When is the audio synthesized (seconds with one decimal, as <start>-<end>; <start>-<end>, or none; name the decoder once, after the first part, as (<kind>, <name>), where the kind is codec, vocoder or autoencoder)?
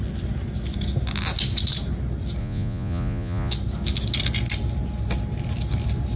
2.4-3.5 (vocoder, Vocos)